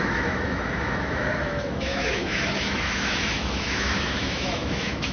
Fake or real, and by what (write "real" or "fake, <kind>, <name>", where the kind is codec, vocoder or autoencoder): fake, autoencoder, DAC-VAE